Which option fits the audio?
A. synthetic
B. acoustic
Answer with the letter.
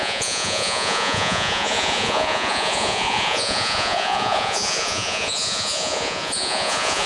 A